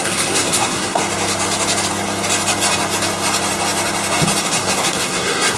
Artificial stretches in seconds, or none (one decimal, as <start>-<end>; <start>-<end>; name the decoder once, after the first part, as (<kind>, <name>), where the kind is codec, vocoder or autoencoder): 0.0-1.0 (codec, SNAC); 4.4-5.6